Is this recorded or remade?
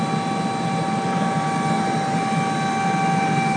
recorded